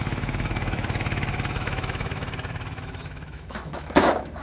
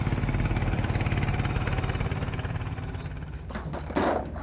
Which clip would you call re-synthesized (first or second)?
first